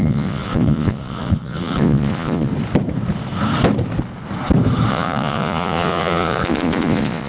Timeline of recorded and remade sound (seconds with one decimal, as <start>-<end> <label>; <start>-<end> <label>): 0.0-2.5 remade; 2.5-4.9 recorded; 4.9-7.3 remade